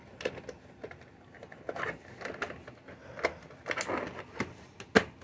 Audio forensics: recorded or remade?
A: recorded